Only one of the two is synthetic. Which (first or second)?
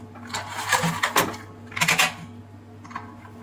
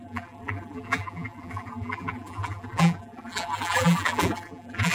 second